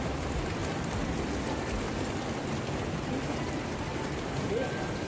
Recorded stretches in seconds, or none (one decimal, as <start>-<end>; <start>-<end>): 0.6-3.7